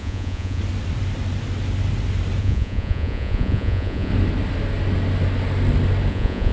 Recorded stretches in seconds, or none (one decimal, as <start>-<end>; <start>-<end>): 0.6-2.4; 4.1-6.1